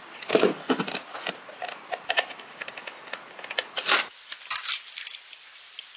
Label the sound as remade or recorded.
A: recorded